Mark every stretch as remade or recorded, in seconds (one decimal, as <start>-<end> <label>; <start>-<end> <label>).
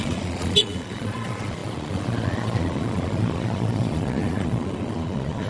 0.0-5.5 remade